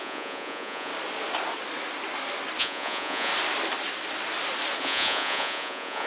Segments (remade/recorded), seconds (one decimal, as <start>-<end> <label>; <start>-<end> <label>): 0.0-0.9 remade; 0.9-2.6 recorded; 2.6-3.3 remade; 3.3-4.8 recorded; 4.8-6.1 remade